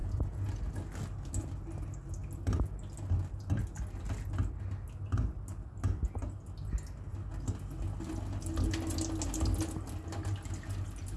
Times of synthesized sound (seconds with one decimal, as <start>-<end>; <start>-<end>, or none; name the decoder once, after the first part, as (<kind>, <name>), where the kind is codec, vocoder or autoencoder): 0.0-0.5 (vocoder, Vocos)